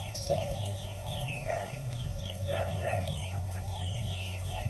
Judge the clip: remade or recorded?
remade